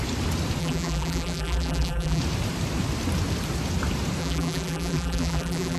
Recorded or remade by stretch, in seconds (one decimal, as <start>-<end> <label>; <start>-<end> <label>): 0.0-0.6 recorded; 0.6-2.2 remade; 2.2-4.2 recorded; 4.2-5.8 remade